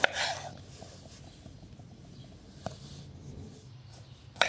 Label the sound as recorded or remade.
recorded